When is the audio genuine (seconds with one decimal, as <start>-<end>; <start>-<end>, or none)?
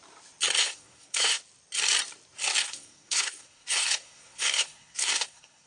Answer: 0.0-0.6; 1.4-2.6